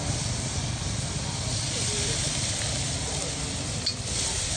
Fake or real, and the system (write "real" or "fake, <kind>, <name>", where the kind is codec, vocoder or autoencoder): fake, vocoder, BigVGAN v2